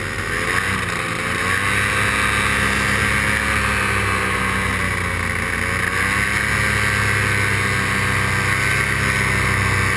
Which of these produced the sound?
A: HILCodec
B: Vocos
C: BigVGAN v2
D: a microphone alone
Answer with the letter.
D